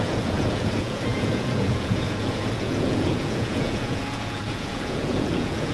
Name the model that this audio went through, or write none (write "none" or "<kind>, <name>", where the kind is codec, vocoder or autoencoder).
vocoder, Vocos